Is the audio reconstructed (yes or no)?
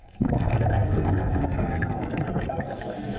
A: yes